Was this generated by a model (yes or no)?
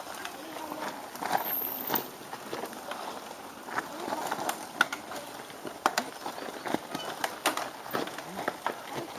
no